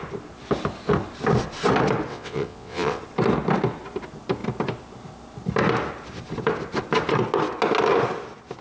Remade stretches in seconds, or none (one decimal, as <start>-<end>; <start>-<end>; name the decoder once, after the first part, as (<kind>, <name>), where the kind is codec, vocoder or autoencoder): 2.1-3.0 (vocoder, WaveNeXt)